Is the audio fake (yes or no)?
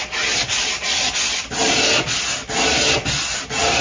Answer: no